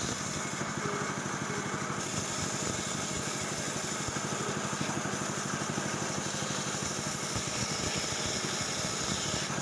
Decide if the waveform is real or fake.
real